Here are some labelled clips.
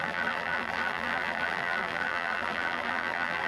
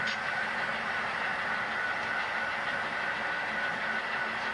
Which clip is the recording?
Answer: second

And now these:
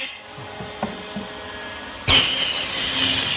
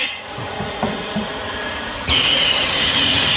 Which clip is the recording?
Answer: first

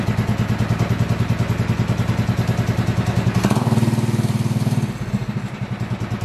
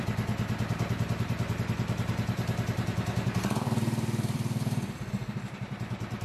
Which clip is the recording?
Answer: first